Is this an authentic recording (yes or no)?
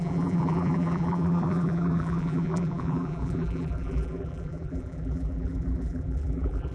no